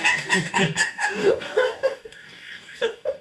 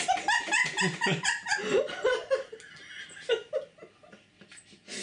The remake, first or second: first